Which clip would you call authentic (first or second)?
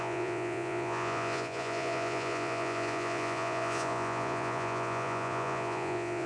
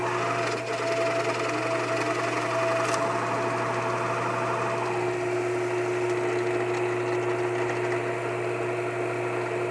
second